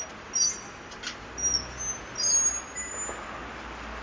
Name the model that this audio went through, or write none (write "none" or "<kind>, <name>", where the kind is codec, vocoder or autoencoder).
none